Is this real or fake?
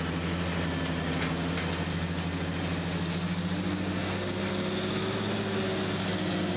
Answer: real